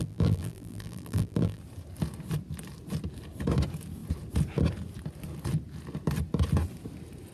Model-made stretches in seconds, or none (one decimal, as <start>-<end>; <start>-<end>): 0.0-1.6